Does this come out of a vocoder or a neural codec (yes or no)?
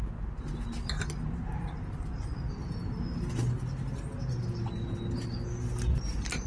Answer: no